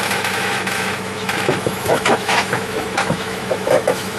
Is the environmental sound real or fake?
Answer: fake